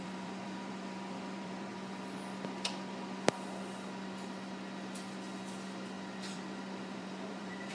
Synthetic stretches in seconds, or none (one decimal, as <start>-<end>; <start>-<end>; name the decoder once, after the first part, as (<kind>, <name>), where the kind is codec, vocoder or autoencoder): 0.0-1.7 (vocoder, BigVGAN v2); 6.3-7.7